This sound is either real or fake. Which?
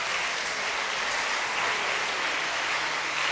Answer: real